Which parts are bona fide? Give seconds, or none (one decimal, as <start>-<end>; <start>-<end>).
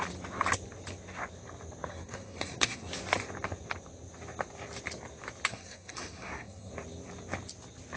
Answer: 0.0-1.9; 2.9-5.5; 6.7-8.0